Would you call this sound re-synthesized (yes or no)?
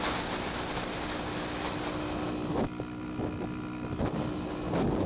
no